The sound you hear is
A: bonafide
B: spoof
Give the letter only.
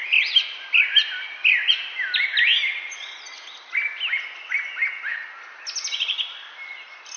A